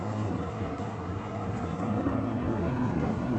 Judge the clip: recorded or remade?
remade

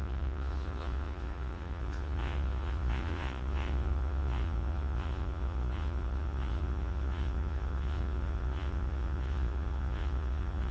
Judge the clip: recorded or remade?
remade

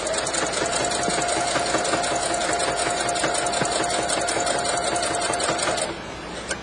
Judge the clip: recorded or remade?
recorded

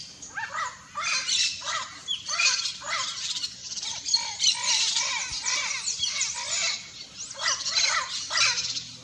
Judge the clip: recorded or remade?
recorded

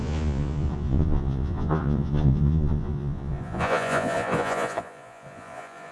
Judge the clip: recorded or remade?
remade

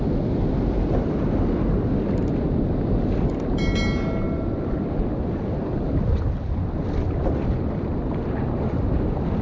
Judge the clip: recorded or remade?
recorded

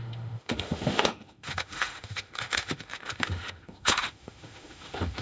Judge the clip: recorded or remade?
remade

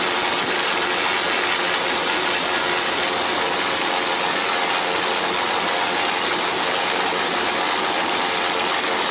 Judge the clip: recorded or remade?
recorded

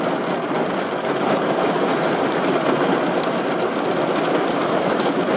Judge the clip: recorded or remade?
recorded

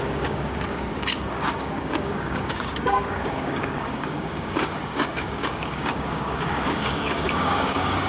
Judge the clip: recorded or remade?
remade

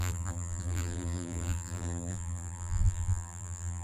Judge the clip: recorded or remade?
remade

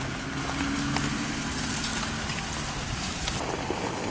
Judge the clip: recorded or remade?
recorded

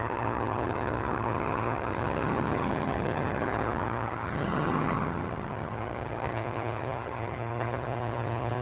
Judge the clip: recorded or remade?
remade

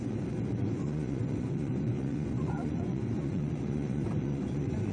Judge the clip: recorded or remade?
remade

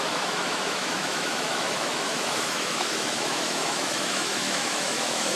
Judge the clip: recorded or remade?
remade